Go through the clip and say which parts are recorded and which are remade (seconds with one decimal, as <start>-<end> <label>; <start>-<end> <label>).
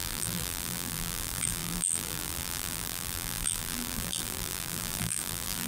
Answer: 0.0-5.7 remade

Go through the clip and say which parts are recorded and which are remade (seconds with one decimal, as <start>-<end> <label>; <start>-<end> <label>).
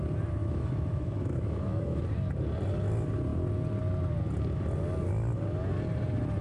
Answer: 0.0-0.4 recorded; 0.4-2.0 remade; 2.0-6.4 recorded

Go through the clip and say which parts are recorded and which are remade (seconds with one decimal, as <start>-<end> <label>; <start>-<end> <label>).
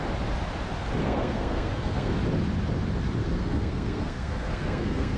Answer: 0.0-1.0 recorded; 1.0-2.1 remade; 2.1-3.2 recorded; 3.2-5.2 remade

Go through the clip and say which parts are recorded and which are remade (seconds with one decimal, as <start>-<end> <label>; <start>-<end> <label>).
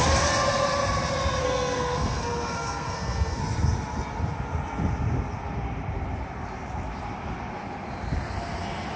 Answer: 0.0-1.4 recorded; 1.4-3.4 remade; 3.4-9.0 recorded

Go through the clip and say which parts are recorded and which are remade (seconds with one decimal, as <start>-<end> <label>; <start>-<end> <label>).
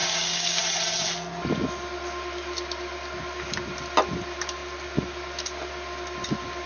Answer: 0.0-0.6 remade; 0.6-6.7 recorded